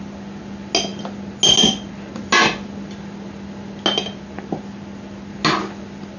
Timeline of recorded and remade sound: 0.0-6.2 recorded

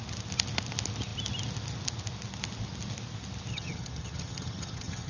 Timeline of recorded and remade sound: 0.0-3.5 recorded; 3.5-5.1 remade

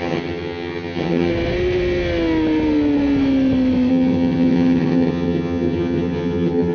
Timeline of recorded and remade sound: 0.0-1.3 remade; 1.3-3.9 recorded; 3.9-6.7 remade